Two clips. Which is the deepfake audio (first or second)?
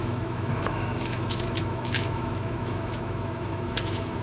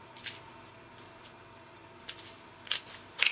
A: first